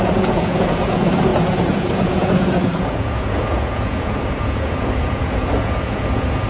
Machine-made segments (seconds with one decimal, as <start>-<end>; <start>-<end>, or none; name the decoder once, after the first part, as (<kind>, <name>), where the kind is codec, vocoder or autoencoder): 0.0-6.5 (vocoder, Vocos)